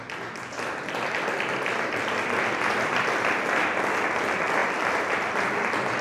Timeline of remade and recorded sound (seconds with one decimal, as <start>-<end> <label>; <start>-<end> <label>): 0.0-6.0 recorded